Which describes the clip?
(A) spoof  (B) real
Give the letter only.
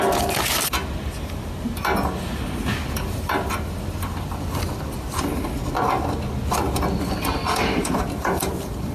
B